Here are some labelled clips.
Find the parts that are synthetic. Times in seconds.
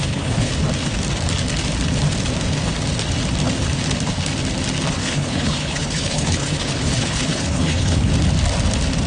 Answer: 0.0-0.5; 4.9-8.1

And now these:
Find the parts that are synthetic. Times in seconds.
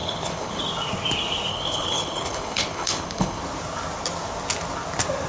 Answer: 0.0-0.6; 1.5-3.4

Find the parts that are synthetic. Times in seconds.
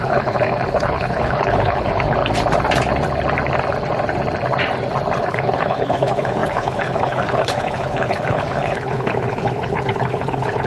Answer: 0.0-2.2; 5.2-10.7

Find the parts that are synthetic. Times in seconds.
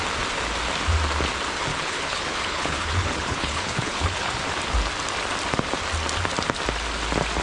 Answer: 1.7-4.3